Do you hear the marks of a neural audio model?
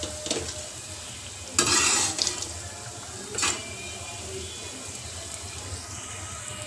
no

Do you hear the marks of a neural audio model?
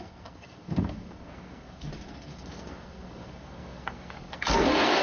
yes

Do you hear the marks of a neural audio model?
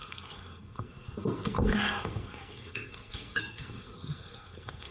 yes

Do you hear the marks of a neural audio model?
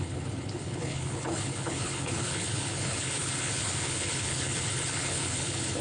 yes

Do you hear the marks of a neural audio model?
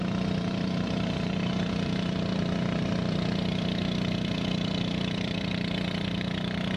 yes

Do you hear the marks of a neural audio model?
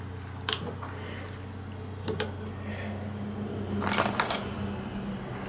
no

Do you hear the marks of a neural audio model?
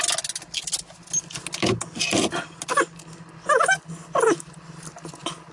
no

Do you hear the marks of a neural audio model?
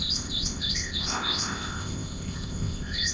yes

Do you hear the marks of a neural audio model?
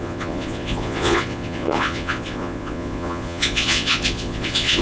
yes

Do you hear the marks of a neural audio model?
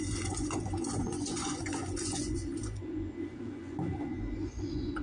yes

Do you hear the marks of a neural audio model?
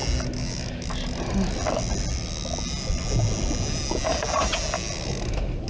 no